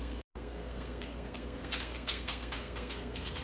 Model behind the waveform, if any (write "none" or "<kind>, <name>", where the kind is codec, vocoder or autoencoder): codec, SNAC